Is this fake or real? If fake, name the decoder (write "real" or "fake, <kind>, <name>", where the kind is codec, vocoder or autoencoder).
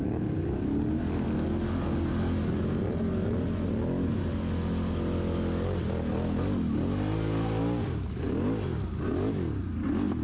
real